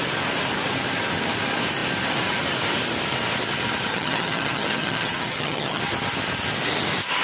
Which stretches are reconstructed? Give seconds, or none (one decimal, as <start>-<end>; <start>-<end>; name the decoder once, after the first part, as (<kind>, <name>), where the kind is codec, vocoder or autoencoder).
3.9-5.8 (vocoder, HiFi-GAN)